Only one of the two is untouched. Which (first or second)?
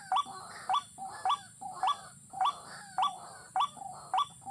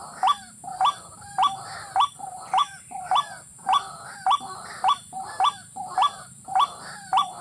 first